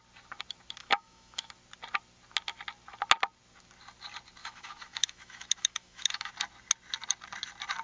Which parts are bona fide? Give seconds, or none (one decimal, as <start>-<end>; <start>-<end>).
0.0-0.8; 1.5-4.4; 6.3-7.8